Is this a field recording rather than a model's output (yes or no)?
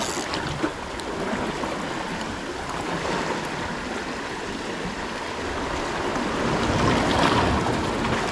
yes